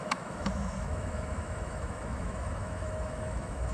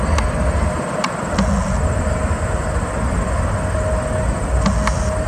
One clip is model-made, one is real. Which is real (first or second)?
second